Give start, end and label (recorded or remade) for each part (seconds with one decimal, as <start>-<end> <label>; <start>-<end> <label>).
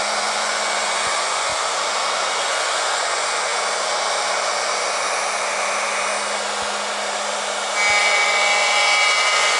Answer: 0.0-1.5 remade; 1.5-2.4 recorded; 2.4-3.5 remade; 3.5-8.0 recorded; 8.0-9.6 remade